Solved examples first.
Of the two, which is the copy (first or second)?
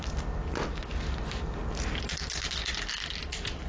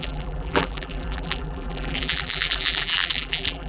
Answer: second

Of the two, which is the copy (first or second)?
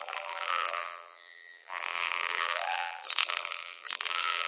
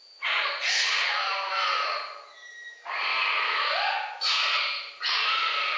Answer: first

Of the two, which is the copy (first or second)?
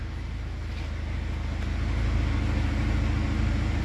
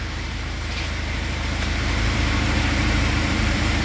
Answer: second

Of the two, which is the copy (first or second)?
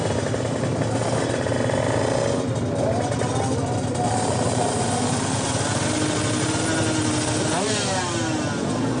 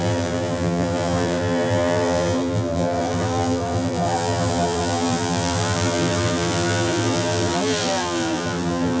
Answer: second